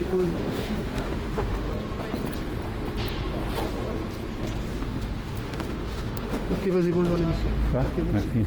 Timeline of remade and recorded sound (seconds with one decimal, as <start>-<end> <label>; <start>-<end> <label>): 0.0-1.7 remade; 1.7-4.7 recorded; 4.7-6.9 remade; 6.9-8.5 recorded